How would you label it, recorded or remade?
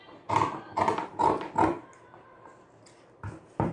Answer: recorded